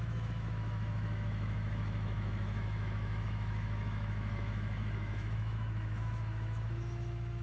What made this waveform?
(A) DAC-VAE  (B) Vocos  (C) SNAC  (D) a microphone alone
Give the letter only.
A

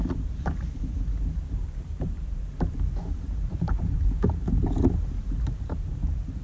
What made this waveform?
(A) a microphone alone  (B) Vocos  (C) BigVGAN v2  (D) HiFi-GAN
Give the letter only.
C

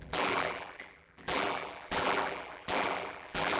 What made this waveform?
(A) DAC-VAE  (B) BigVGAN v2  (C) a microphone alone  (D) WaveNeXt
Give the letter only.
B